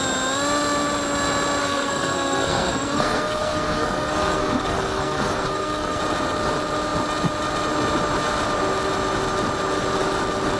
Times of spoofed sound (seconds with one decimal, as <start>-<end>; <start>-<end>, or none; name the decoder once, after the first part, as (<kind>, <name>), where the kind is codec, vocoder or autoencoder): 1.6-6.0 (codec, SNAC)